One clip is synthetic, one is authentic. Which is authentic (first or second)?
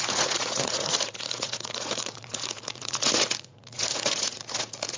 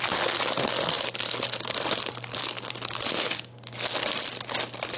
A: second